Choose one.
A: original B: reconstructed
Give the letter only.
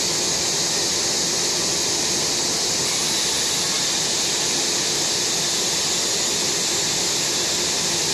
B